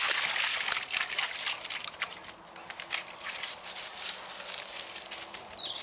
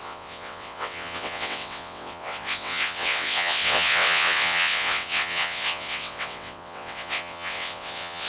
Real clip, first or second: first